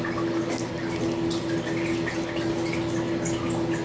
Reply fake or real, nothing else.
real